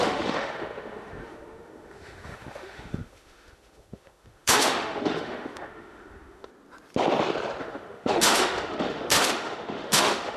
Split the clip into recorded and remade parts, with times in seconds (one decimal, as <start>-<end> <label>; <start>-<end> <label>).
0.0-6.5 remade; 6.5-7.6 recorded; 7.6-10.4 remade